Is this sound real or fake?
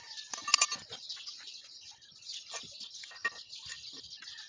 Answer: real